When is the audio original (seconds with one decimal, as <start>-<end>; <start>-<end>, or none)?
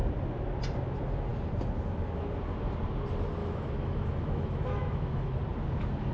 0.0-3.4; 5.4-6.1